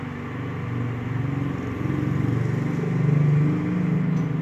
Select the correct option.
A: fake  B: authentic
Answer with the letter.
B